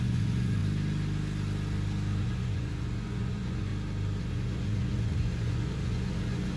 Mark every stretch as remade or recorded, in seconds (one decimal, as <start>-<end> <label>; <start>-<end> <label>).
0.0-0.6 remade; 0.6-2.2 recorded; 2.2-3.7 remade; 3.7-4.2 recorded; 4.2-6.6 remade

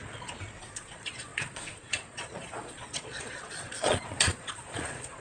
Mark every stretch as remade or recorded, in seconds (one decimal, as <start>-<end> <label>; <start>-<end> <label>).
0.0-0.6 recorded; 0.6-5.2 remade

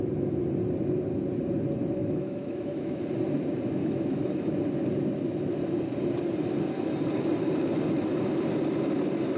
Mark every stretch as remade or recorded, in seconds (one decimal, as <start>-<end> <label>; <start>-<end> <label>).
0.0-2.0 recorded; 2.0-3.0 remade; 3.0-3.8 recorded; 3.8-4.6 remade; 4.6-9.4 recorded

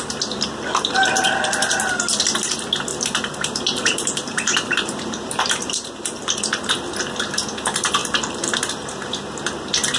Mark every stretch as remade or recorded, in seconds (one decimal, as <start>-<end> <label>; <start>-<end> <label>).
0.0-2.9 recorded; 2.9-6.4 remade; 6.4-8.0 recorded; 8.0-8.7 remade; 8.7-10.0 recorded

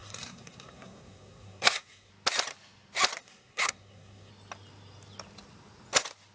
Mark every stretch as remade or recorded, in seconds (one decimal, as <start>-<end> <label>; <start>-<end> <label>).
0.0-2.1 remade; 2.1-3.2 recorded; 3.2-4.3 remade; 4.3-6.3 recorded

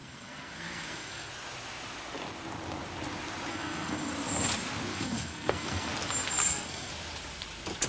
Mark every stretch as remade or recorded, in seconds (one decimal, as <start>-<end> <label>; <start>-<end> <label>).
0.0-1.3 remade; 1.3-3.5 recorded; 3.5-4.1 remade; 4.1-4.9 recorded; 4.9-5.9 remade; 5.9-6.4 recorded; 6.4-6.9 remade; 6.9-7.9 recorded

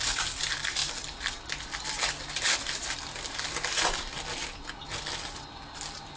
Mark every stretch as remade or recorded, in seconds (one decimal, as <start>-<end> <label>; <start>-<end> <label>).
0.0-0.8 recorded; 0.8-1.5 remade; 1.5-5.1 recorded; 5.1-5.6 remade; 5.6-6.2 recorded